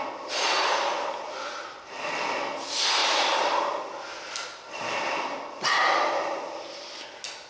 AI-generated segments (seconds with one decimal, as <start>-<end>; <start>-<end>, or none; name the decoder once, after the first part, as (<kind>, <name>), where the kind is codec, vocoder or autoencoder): none